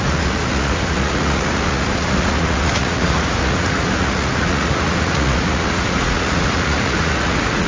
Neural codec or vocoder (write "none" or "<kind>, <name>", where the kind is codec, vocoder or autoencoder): vocoder, Vocos